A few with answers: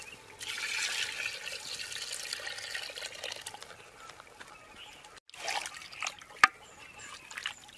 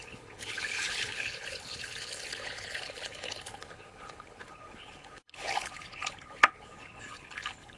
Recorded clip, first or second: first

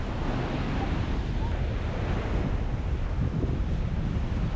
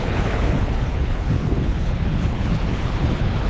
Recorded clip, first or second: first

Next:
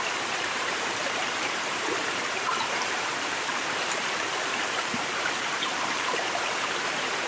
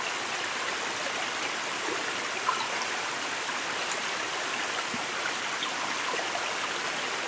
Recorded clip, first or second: second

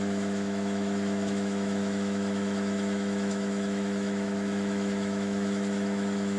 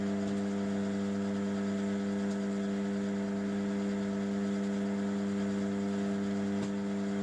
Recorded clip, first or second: second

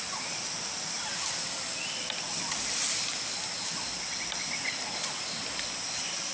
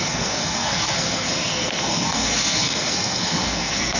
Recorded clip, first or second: first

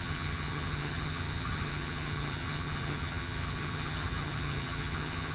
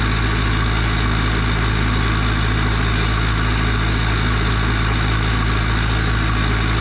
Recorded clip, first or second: second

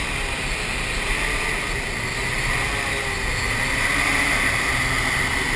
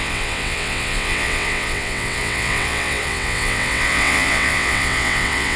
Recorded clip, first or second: first